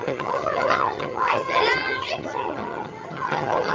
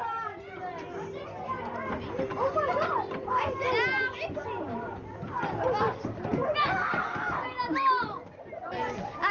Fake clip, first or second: first